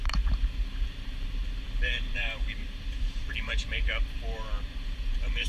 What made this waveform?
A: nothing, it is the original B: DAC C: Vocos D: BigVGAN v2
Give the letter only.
D